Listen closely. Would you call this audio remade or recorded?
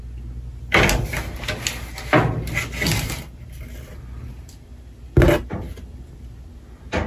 recorded